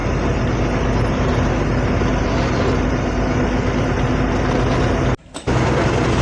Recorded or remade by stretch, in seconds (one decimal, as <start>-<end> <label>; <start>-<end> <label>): 0.0-6.2 recorded